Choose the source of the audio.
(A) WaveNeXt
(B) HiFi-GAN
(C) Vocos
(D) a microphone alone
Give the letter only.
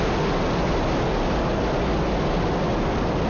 D